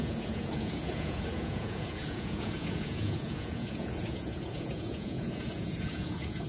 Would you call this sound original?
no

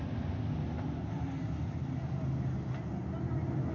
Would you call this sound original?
yes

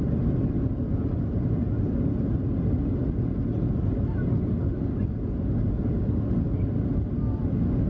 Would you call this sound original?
yes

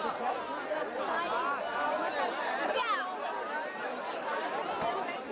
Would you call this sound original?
yes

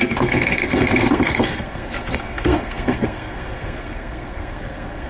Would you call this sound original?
no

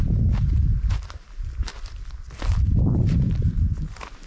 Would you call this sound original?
no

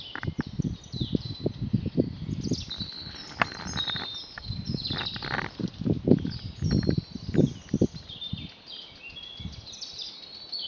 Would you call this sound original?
yes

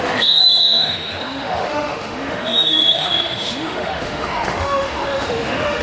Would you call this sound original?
no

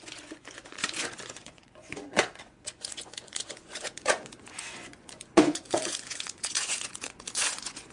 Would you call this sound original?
no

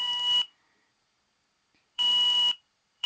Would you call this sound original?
no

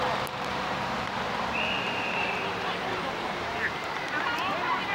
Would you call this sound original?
no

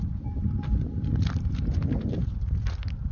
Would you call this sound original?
yes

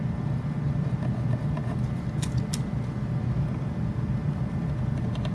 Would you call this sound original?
yes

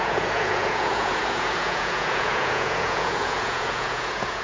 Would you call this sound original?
no